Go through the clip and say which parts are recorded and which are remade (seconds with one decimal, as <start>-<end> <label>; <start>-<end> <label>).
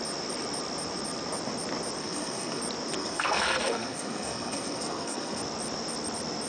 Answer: 0.0-2.0 recorded; 2.0-2.6 remade; 2.6-3.0 recorded; 3.0-5.4 remade; 5.4-6.5 recorded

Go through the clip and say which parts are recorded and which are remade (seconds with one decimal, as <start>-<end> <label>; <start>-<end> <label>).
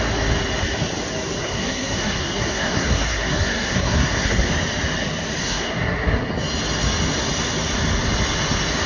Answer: 0.0-1.4 recorded; 1.4-4.5 remade; 4.5-5.4 recorded; 5.4-6.3 remade; 6.3-8.9 recorded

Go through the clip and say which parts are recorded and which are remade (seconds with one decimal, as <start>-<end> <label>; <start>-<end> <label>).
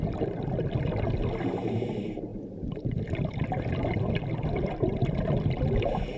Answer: 0.0-6.2 recorded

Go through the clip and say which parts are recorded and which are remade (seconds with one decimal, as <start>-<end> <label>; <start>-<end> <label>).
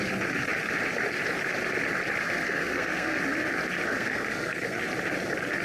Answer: 0.0-2.2 recorded; 2.2-3.2 remade; 3.2-3.9 recorded; 3.9-4.8 remade; 4.8-5.6 recorded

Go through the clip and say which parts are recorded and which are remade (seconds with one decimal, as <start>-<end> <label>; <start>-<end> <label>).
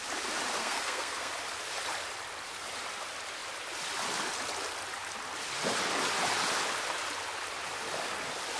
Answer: 0.0-0.6 recorded; 0.6-1.3 remade; 1.3-8.6 recorded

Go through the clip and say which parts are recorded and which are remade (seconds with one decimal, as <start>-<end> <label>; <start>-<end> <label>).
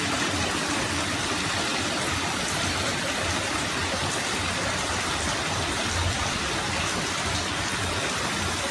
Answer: 0.0-8.7 recorded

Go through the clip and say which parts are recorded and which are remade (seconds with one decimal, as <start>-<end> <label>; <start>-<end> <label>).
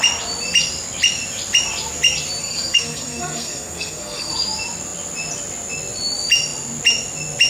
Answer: 0.0-2.4 recorded; 2.4-4.3 remade; 4.3-7.5 recorded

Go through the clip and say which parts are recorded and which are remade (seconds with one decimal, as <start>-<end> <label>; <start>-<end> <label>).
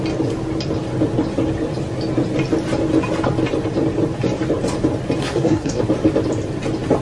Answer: 0.0-5.2 recorded; 5.2-5.8 remade; 5.8-7.0 recorded